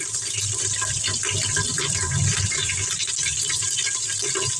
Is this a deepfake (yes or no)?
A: no